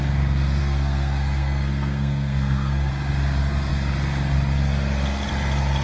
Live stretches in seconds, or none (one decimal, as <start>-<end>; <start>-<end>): 0.0-0.6; 2.9-5.8